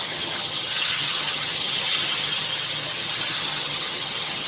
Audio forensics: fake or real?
fake